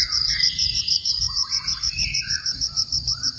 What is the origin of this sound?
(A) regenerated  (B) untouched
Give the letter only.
A